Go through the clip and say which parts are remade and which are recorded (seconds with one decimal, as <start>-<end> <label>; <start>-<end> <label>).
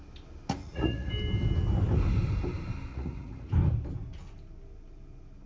0.0-0.6 recorded; 0.6-1.1 remade; 1.1-2.9 recorded; 2.9-3.5 remade; 3.5-5.5 recorded